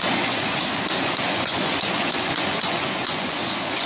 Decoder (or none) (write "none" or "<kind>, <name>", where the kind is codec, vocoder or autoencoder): vocoder, Vocos